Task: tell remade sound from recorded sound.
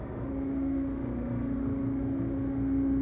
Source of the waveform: remade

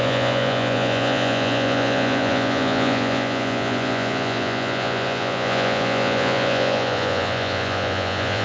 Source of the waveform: remade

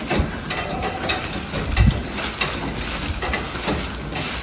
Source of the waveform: recorded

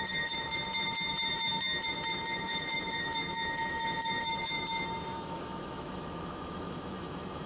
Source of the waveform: remade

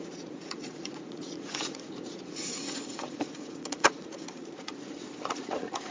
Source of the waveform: remade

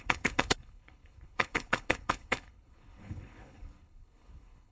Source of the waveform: remade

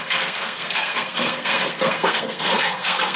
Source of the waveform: remade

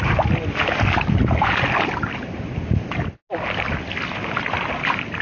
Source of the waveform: recorded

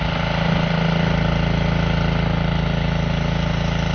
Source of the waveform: recorded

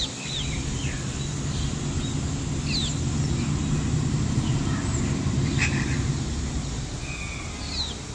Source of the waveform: recorded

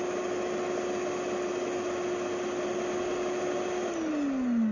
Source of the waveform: recorded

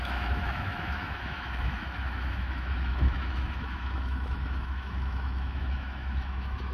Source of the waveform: remade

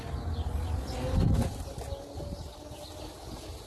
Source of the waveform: recorded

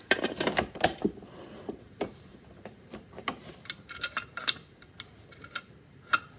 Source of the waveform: remade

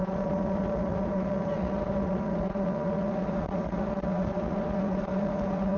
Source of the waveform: remade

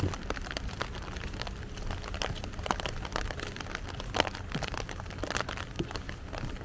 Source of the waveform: recorded